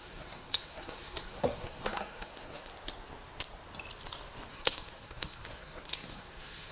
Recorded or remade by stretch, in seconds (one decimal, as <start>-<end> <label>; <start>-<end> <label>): 0.0-2.7 remade; 2.7-4.5 recorded; 4.5-6.7 remade